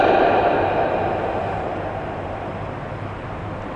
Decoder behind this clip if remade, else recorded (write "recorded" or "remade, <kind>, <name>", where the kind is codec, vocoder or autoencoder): remade, vocoder, BigVGAN v2